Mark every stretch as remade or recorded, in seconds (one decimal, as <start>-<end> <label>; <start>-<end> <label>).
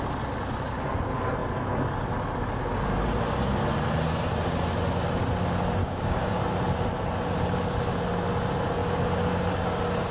0.0-5.8 recorded; 5.8-6.4 remade; 6.4-10.1 recorded